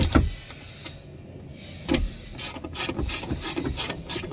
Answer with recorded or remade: recorded